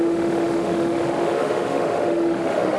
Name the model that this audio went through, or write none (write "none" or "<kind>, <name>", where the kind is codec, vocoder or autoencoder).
autoencoder, DAC-VAE